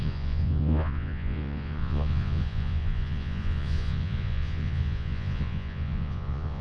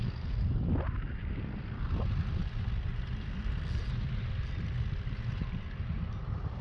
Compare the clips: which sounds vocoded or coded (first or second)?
first